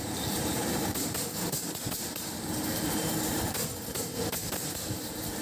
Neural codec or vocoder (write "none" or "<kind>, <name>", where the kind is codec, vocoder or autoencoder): vocoder, BigVGAN v2